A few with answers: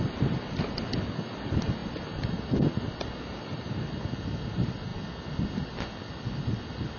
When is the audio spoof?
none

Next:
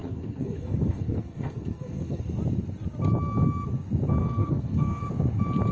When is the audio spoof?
0.0-2.2; 4.2-5.0

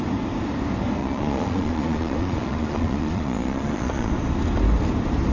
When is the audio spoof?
1.0-4.1

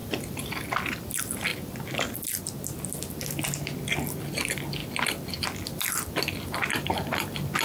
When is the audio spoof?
0.0-0.5

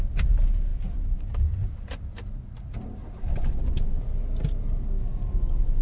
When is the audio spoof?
none

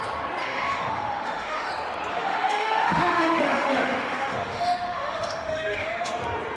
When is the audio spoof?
0.4-1.7; 2.1-6.1

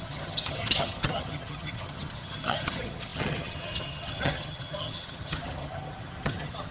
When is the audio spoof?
0.0-6.7